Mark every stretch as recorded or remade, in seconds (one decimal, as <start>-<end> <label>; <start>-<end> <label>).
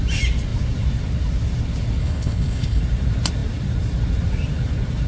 0.0-2.0 recorded; 2.0-2.8 remade; 2.8-5.1 recorded